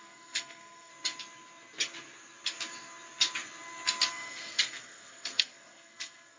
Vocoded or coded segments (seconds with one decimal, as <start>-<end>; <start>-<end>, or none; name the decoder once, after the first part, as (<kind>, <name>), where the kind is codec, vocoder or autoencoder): 0.0-0.9 (codec, SNAC); 4.1-6.4